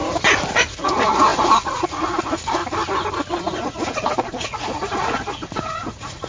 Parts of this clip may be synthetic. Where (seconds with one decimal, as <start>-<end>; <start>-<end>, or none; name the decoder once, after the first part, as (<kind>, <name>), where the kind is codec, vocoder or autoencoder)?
0.7-2.6 (vocoder, Vocos); 3.4-6.3